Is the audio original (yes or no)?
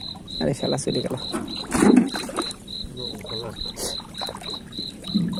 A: no